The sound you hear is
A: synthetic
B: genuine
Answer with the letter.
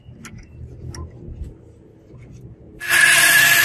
B